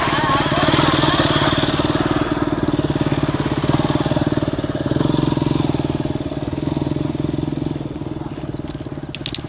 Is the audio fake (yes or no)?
no